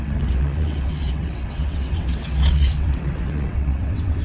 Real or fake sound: fake